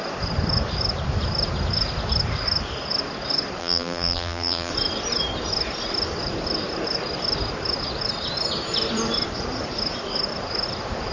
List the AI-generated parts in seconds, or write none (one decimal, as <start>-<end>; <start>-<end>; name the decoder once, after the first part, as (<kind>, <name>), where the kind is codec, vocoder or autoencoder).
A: 3.6-4.7 (vocoder, BigVGAN v2)

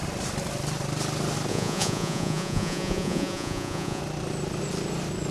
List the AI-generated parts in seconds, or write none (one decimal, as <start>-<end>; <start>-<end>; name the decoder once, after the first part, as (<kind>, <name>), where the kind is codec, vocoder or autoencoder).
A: 1.5-4.0 (vocoder, Vocos)

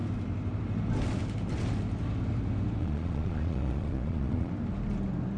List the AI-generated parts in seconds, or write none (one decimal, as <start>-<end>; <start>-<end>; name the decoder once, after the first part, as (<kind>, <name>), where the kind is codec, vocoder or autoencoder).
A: 2.8-4.5 (vocoder, Vocos)

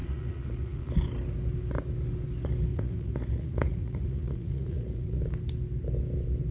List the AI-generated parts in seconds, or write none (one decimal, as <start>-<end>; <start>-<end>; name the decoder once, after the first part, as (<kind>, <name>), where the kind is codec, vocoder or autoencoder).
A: 0.0-0.9 (vocoder, Vocos); 2.7-5.2